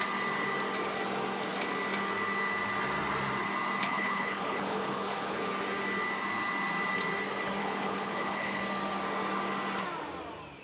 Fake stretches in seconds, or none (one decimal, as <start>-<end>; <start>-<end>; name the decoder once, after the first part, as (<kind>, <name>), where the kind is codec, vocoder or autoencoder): 3.8-5.4 (codec, HILCodec); 7.6-8.6